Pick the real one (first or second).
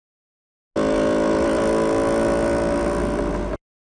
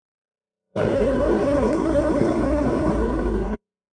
first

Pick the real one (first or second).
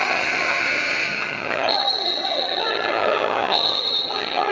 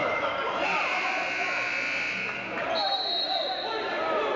second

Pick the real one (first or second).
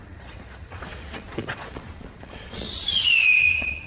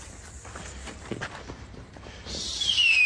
second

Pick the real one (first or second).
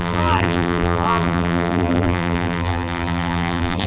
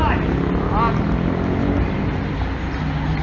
second